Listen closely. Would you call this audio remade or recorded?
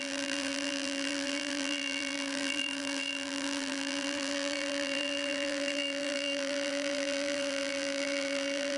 remade